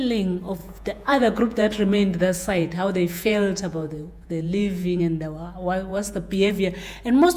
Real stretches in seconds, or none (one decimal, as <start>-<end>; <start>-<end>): 0.0-0.6; 5.0-5.9; 6.5-7.4